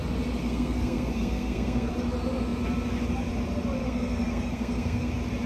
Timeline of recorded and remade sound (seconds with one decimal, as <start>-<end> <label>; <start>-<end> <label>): 0.0-0.4 recorded; 0.4-1.9 remade; 1.9-3.8 recorded; 3.8-5.1 remade; 5.1-5.5 recorded